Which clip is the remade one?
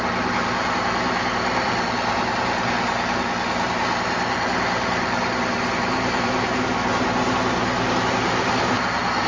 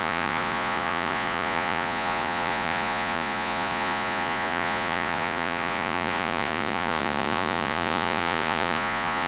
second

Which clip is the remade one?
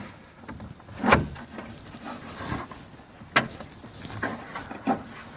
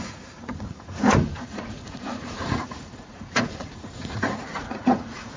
second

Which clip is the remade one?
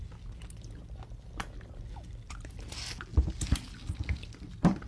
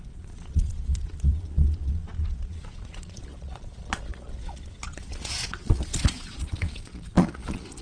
second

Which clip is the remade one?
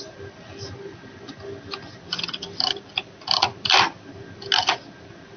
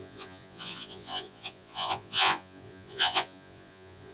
second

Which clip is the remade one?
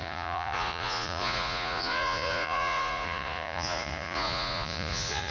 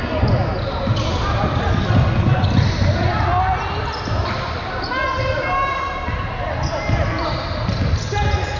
first